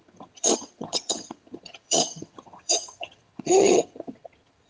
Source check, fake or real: fake